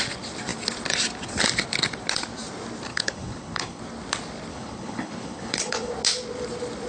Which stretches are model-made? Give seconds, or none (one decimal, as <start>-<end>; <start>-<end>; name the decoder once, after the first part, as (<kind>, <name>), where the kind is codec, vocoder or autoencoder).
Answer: 2.9-3.8 (codec, HILCodec); 4.5-5.9